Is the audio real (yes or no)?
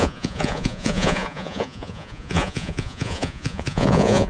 no